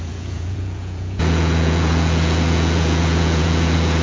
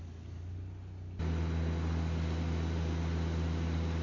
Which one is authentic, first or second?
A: second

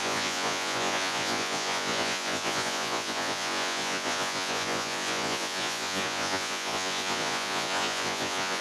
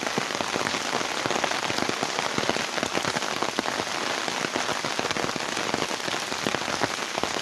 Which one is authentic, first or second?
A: second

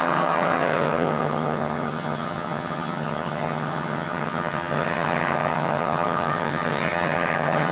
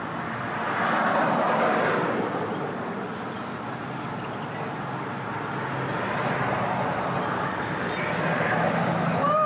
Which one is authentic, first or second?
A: second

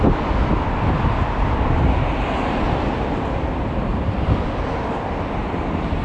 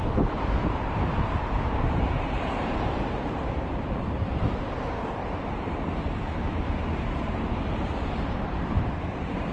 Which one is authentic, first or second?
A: first